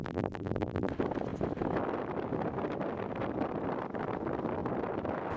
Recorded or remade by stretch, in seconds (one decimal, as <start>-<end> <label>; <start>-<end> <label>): 0.0-0.9 remade; 0.9-5.4 recorded